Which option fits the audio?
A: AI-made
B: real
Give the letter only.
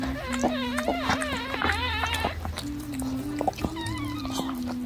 B